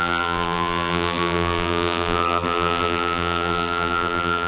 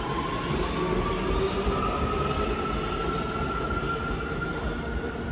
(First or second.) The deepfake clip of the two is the first